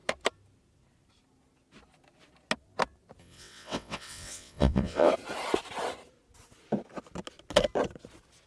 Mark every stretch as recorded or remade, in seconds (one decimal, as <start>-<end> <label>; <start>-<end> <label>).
0.0-3.2 recorded; 3.2-5.1 remade; 5.1-8.5 recorded